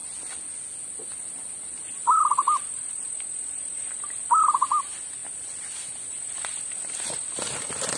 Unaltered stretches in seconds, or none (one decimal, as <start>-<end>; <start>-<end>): 0.0-8.0